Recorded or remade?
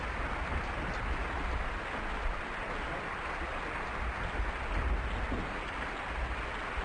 recorded